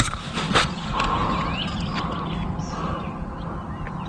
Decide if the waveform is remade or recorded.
recorded